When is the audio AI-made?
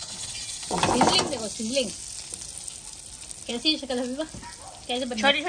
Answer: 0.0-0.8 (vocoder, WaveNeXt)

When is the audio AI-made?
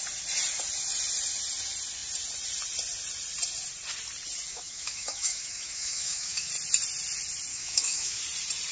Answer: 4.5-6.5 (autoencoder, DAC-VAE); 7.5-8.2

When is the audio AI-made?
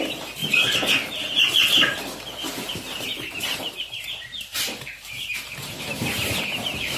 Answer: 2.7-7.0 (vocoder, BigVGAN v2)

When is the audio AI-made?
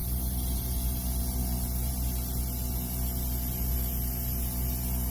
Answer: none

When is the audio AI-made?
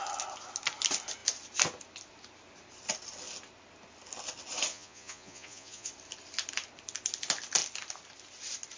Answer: 4.7-5.9 (vocoder, Vocos)